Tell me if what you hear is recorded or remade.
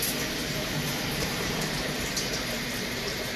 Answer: remade